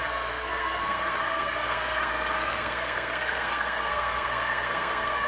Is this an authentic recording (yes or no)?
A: no